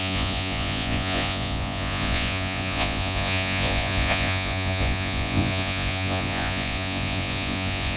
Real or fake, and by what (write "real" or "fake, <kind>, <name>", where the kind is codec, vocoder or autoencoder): fake, vocoder, Vocos